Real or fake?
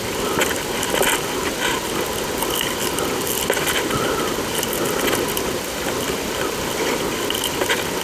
real